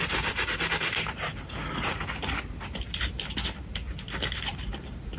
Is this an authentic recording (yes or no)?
yes